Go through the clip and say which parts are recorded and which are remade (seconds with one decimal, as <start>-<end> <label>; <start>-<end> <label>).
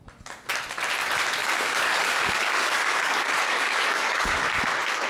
0.0-1.4 recorded; 1.4-4.5 remade; 4.5-5.1 recorded